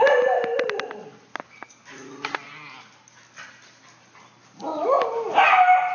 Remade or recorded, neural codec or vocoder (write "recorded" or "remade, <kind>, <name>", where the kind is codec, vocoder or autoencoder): recorded